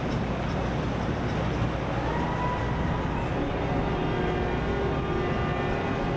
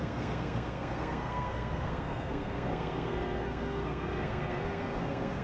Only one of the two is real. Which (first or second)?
first